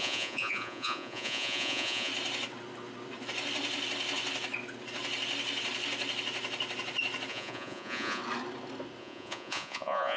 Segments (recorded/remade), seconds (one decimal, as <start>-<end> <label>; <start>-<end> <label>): 0.0-2.1 remade; 2.1-7.3 recorded; 7.3-8.2 remade; 8.2-9.0 recorded; 9.0-10.2 remade